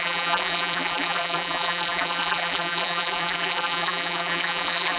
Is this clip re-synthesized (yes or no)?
yes